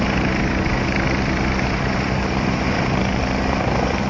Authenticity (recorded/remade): remade